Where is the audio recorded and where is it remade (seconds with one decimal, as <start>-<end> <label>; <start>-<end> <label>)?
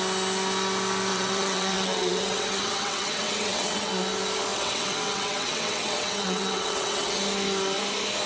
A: 0.0-1.1 recorded; 1.1-3.9 remade; 3.9-4.5 recorded; 4.5-7.2 remade; 7.2-8.3 recorded